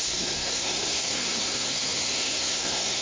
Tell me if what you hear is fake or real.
fake